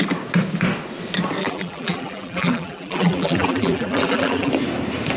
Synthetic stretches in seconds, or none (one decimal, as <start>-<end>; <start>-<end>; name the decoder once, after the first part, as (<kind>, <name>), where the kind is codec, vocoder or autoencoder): 1.4-4.5 (vocoder, BigVGAN v2)